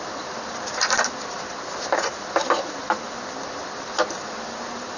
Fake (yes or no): yes